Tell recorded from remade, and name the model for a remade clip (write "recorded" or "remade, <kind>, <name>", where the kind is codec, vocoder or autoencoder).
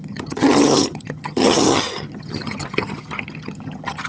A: remade, vocoder, HiFi-GAN